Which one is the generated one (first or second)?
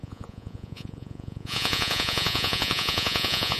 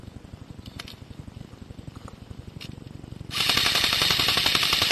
first